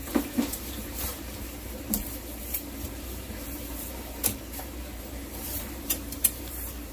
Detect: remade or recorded remade